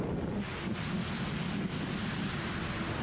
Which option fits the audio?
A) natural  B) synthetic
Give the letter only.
B